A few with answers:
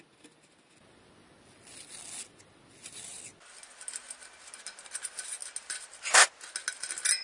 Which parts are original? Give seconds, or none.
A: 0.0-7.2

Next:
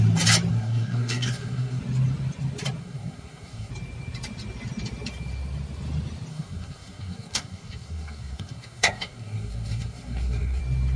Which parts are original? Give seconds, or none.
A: 0.0-0.5; 1.8-2.8; 3.7-6.3; 10.6-11.0

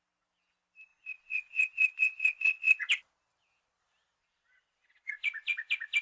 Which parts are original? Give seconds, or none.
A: 0.0-0.9; 2.9-4.2; 5.2-6.0

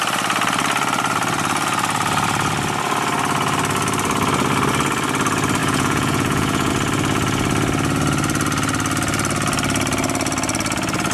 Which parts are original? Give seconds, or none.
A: 0.0-5.6; 6.7-11.1